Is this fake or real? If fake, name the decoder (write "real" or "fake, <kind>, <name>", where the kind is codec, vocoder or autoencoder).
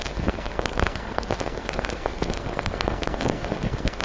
fake, codec, SNAC